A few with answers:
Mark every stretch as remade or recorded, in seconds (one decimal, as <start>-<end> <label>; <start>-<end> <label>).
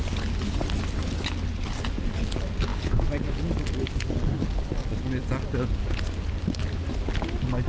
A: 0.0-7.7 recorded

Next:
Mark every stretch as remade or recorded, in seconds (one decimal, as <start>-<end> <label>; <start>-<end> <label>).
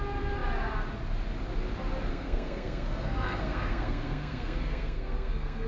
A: 0.0-2.1 recorded; 2.1-5.7 remade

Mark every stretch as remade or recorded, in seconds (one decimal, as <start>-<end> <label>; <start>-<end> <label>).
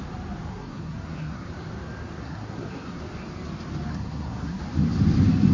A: 0.0-0.5 recorded; 0.5-1.5 remade; 1.5-2.2 recorded; 2.2-3.0 remade; 3.0-3.9 recorded; 3.9-4.6 remade; 4.6-5.5 recorded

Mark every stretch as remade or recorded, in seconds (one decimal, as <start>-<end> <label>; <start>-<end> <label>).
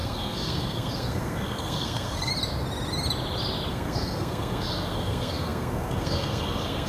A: 0.0-2.3 remade; 2.3-3.7 recorded; 3.7-6.9 remade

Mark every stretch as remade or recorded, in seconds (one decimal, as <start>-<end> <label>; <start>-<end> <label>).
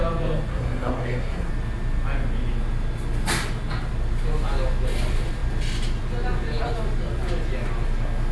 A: 0.0-0.5 recorded; 0.5-1.5 remade; 1.5-8.3 recorded